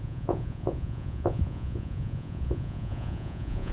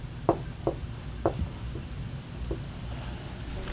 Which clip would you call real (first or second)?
second